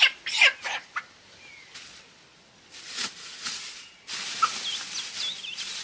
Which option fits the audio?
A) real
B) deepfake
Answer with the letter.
A